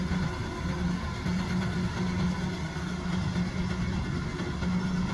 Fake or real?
real